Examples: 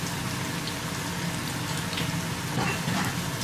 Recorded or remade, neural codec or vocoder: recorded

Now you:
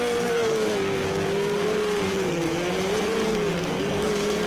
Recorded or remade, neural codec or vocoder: remade, codec, SNAC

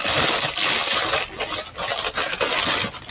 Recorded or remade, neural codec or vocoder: recorded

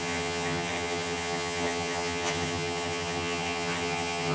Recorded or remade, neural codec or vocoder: remade, vocoder, HiFi-GAN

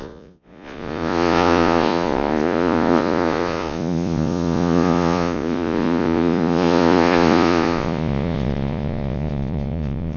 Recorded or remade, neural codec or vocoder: remade, vocoder, Vocos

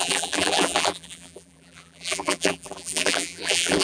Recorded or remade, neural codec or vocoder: remade, vocoder, BigVGAN v2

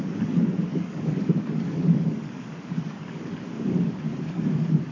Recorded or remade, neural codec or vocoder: remade, codec, DAC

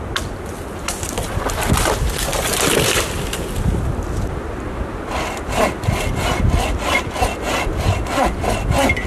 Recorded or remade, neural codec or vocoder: recorded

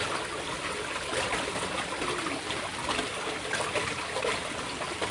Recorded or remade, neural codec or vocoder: recorded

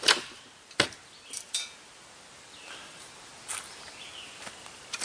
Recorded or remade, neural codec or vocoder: recorded